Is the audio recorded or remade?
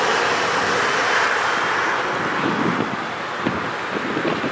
recorded